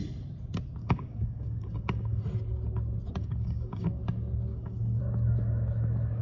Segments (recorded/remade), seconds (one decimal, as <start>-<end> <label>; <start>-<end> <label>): 0.0-0.8 recorded; 0.8-2.2 remade; 2.2-3.2 recorded; 3.2-4.0 remade; 4.0-4.5 recorded; 4.5-5.0 remade; 5.0-6.2 recorded